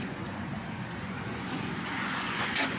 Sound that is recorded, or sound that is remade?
remade